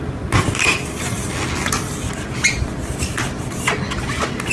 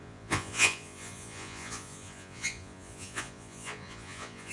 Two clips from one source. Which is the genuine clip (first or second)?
first